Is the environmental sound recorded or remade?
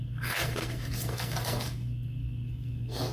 remade